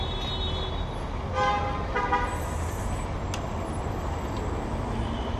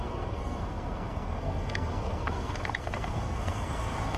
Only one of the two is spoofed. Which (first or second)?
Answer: second